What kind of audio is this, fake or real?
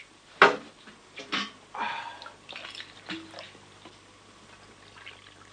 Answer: real